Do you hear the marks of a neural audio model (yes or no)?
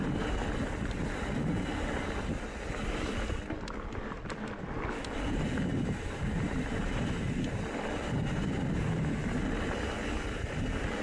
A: no